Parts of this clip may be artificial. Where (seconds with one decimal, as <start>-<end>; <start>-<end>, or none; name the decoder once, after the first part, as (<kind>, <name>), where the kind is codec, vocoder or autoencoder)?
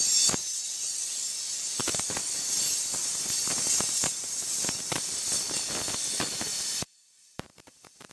3.0-5.1 (vocoder, BigVGAN v2); 6.5-8.1